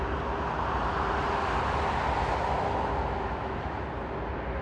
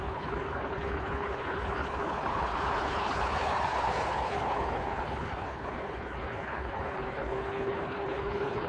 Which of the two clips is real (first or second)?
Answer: first